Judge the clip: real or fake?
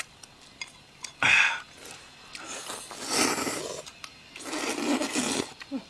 real